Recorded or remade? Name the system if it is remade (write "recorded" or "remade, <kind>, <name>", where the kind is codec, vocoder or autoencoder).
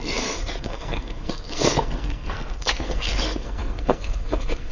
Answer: remade, codec, SNAC